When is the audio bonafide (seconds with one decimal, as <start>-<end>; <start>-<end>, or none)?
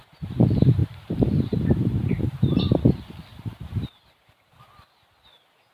0.0-0.8; 2.6-3.3; 4.6-5.7